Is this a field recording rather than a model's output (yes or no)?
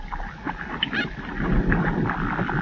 yes